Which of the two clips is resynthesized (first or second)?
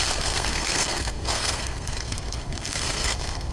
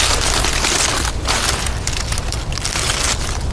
first